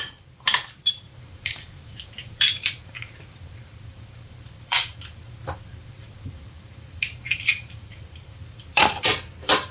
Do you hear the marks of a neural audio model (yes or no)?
yes